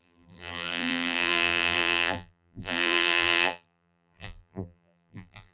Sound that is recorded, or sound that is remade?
remade